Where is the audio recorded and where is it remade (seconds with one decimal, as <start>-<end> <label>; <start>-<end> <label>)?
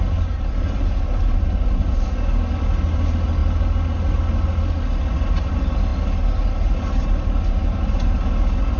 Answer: 0.0-8.8 recorded